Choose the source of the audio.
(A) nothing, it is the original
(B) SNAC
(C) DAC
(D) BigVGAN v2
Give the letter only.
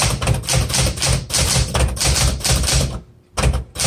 A